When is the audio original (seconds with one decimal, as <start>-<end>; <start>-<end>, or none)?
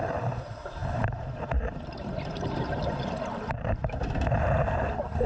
none